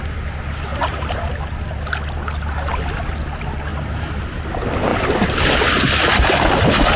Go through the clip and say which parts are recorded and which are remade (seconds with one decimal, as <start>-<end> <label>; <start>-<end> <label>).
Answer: 0.0-0.7 recorded; 0.7-1.3 remade; 1.3-3.7 recorded; 3.7-4.5 remade; 4.5-7.0 recorded

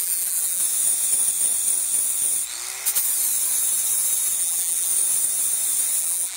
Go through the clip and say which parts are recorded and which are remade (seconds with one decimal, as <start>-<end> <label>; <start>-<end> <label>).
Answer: 0.0-0.6 remade; 0.6-4.4 recorded; 4.4-4.9 remade; 4.9-6.0 recorded; 6.0-6.4 remade

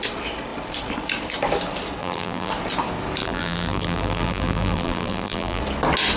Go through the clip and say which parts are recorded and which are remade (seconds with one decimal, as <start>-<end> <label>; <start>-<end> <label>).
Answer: 0.0-2.0 recorded; 2.0-2.5 remade; 2.5-3.2 recorded; 3.2-5.6 remade; 5.6-6.2 recorded